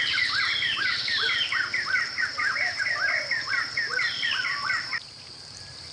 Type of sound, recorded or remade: remade